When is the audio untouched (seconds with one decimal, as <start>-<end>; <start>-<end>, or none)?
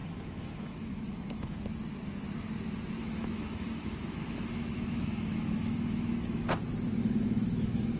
1.6-3.0; 6.5-7.0